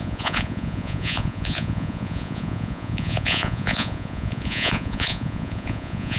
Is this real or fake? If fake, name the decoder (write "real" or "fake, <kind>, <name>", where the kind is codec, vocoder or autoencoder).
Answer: fake, vocoder, Vocos